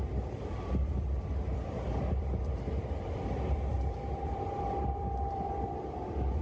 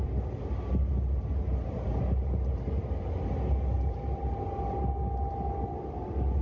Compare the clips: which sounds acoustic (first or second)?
second